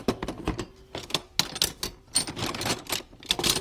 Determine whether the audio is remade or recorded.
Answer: recorded